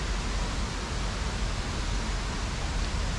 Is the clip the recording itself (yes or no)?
yes